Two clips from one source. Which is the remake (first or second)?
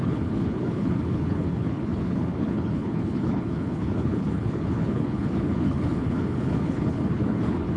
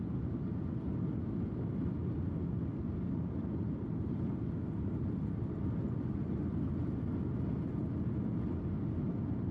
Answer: first